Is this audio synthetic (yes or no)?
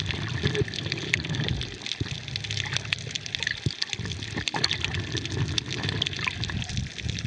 no